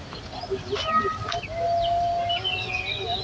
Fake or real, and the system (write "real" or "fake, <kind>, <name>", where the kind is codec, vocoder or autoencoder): real